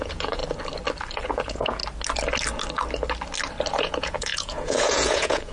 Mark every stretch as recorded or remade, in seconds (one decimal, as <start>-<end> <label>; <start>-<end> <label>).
0.0-0.4 remade; 0.4-1.2 recorded; 1.2-1.8 remade; 1.8-3.7 recorded; 3.7-5.5 remade